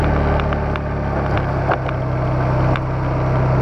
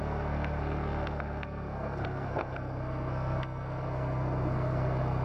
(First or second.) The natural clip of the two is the first